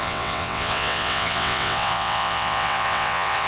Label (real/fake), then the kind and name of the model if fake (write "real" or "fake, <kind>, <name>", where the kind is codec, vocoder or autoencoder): fake, vocoder, WaveNeXt